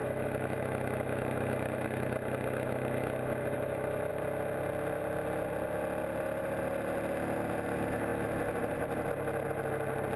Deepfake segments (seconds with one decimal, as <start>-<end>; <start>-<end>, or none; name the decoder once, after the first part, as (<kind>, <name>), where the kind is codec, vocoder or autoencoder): 0.0-4.1 (autoencoder, DAC-VAE)